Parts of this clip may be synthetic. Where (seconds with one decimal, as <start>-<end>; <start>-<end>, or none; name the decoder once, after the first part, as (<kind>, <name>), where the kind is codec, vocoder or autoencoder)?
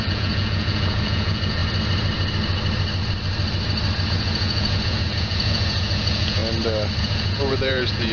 0.0-1.6 (vocoder, Vocos); 4.1-6.4; 7.0-8.1